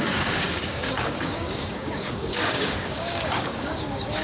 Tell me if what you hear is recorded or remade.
remade